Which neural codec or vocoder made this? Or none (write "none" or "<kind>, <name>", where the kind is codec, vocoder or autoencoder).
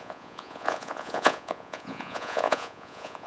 vocoder, Vocos